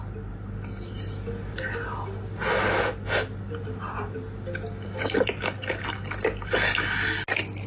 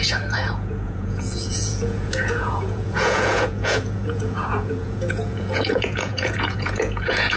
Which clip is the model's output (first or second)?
second